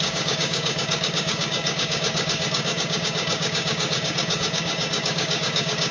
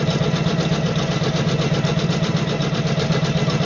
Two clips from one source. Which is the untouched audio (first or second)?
second